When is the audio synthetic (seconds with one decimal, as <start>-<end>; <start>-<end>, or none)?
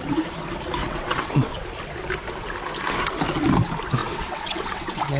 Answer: 0.8-1.5; 4.0-5.2